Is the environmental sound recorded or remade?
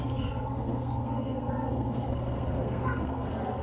remade